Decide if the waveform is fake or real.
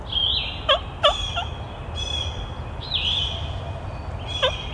real